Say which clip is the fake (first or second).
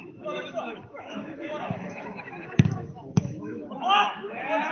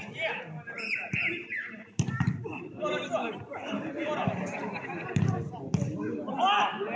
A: first